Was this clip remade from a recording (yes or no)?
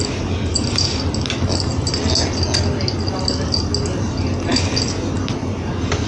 no